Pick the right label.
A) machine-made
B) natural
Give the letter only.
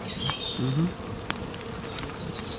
B